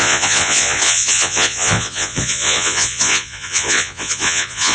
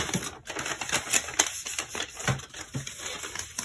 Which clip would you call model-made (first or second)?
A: first